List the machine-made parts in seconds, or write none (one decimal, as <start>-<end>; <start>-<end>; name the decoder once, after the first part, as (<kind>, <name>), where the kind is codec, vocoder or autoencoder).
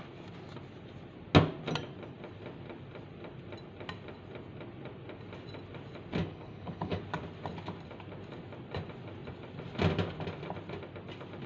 6.2-7.0 (codec, HILCodec)